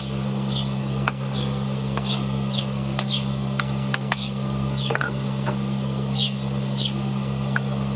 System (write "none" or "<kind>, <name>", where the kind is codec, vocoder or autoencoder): codec, SNAC